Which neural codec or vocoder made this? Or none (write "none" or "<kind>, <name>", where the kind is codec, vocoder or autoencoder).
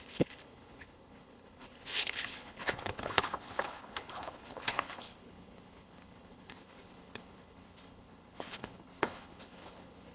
codec, HILCodec